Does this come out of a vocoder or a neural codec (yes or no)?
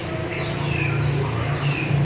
no